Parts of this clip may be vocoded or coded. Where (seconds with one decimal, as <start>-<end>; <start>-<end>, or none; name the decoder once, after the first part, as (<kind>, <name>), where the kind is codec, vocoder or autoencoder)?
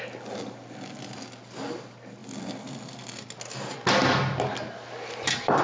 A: none